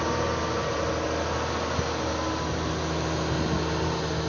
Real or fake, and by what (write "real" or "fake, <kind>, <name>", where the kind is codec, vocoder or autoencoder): real